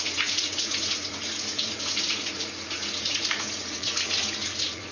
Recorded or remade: remade